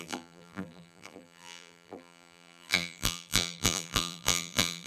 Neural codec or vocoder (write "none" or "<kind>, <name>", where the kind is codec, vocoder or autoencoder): vocoder, BigVGAN v2